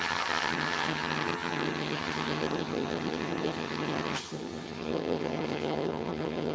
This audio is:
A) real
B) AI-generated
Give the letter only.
B